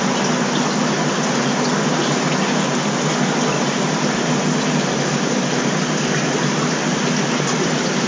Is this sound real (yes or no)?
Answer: yes